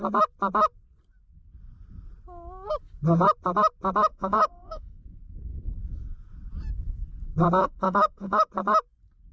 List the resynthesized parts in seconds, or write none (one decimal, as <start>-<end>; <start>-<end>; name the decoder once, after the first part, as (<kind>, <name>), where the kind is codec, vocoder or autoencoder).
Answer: 4.1-5.0 (autoencoder, DAC-VAE); 7.6-8.5